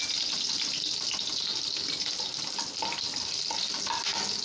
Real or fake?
real